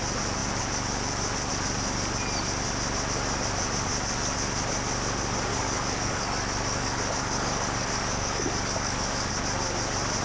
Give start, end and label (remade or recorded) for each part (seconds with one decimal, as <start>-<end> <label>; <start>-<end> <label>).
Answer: 0.0-5.5 recorded; 5.5-9.3 remade; 9.3-10.2 recorded